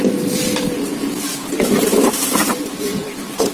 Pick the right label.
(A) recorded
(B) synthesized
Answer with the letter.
B